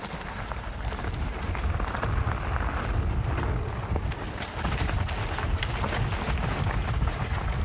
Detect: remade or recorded recorded